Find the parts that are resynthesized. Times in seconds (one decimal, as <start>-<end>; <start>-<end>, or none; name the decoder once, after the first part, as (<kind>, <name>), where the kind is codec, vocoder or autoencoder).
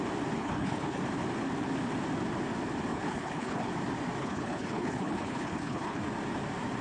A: 0.4-1.0 (codec, HILCodec); 2.9-3.7; 4.2-6.0